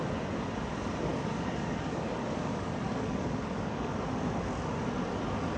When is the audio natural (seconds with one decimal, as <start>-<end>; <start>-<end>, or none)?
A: 0.0-1.1; 3.9-5.6